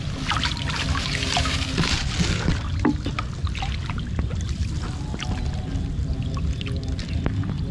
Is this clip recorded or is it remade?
recorded